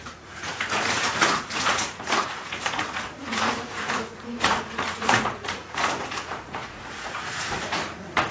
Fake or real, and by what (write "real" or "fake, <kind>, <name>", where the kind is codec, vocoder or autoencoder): fake, vocoder, Vocos